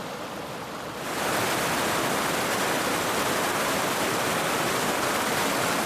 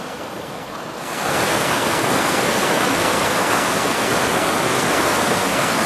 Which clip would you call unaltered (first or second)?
first